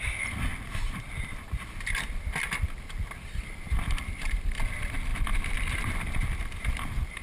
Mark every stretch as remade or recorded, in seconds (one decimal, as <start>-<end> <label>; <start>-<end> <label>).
0.0-0.5 remade; 0.5-3.3 recorded; 3.3-5.1 remade; 5.1-6.7 recorded; 6.7-7.2 remade